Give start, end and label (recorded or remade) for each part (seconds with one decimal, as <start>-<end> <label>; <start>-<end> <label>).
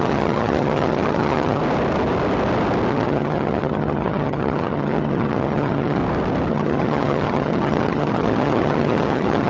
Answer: 0.0-1.6 remade; 1.6-2.9 recorded; 2.9-6.0 remade; 6.0-6.5 recorded; 6.5-9.5 remade